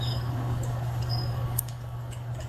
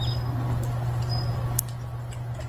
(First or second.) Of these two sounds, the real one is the second